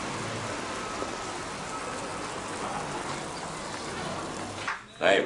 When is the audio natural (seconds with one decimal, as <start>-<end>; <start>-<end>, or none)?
0.0-5.3